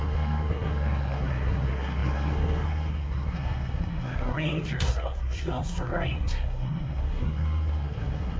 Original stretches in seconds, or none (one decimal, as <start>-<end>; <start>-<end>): none